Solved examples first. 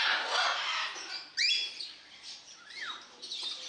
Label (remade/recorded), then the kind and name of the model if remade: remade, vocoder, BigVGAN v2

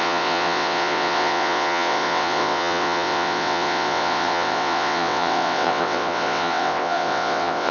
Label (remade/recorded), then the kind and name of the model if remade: remade, vocoder, WaveNeXt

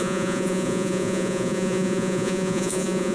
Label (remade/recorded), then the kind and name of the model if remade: remade, vocoder, Vocos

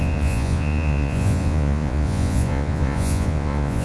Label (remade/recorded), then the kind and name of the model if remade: remade, vocoder, Vocos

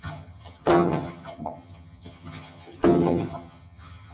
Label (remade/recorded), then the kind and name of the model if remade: remade, vocoder, HiFi-GAN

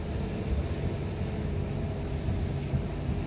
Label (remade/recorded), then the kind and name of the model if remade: recorded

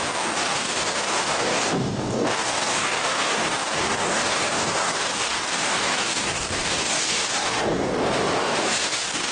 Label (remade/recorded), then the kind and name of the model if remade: remade, codec, DAC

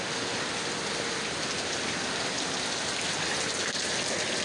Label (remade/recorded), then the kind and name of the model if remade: recorded